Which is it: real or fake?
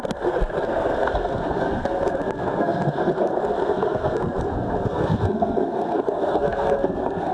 fake